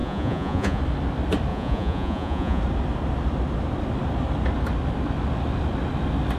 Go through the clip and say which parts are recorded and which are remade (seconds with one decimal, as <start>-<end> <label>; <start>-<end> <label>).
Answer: 0.0-0.8 remade; 0.8-1.5 recorded; 1.5-2.6 remade; 2.6-6.4 recorded